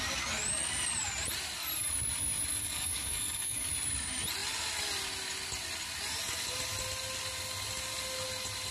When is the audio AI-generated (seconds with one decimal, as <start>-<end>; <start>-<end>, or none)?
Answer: 2.6-3.7